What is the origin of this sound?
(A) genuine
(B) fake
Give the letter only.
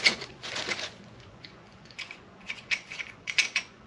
B